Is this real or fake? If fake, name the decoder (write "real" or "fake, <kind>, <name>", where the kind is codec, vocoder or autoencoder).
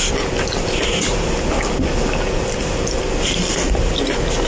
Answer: real